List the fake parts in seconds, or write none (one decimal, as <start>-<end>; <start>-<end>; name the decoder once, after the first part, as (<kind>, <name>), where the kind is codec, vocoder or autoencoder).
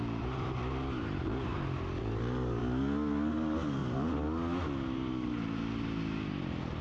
0.0-1.5 (vocoder, BigVGAN v2); 2.0-2.6; 3.3-3.8